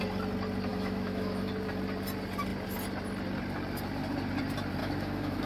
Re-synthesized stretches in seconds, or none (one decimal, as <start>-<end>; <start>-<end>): 0.7-1.5; 4.8-5.5